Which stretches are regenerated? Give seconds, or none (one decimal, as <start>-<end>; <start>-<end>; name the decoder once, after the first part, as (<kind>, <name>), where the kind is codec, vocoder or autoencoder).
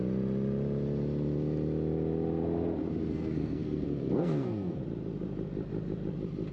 3.1-4.8 (codec, SNAC)